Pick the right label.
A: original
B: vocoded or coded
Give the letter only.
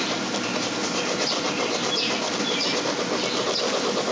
A